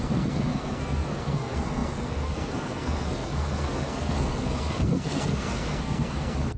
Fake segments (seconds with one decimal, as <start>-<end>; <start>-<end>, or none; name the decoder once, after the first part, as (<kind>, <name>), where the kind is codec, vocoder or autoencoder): 0.0-6.6 (codec, SNAC)